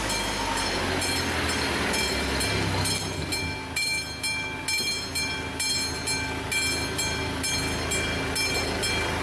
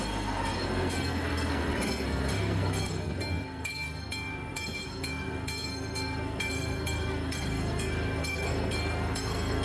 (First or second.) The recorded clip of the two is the first